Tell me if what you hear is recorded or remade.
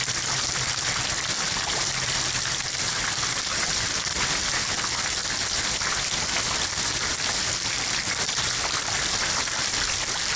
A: recorded